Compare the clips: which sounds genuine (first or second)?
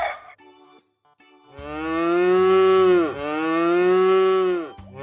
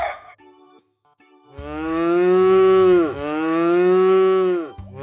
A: first